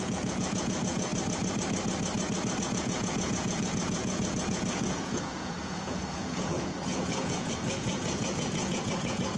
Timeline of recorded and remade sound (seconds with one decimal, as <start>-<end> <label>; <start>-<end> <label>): 0.0-1.1 remade; 1.1-2.6 recorded; 2.6-9.4 remade